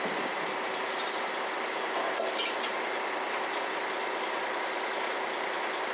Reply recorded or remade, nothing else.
recorded